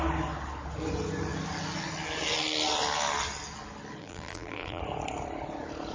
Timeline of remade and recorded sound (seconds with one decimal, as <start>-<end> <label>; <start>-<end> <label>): 0.0-4.0 recorded; 4.0-4.8 remade; 4.8-5.9 recorded